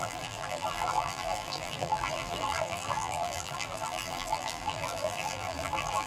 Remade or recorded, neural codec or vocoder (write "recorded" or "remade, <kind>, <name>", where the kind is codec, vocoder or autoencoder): remade, vocoder, BigVGAN v2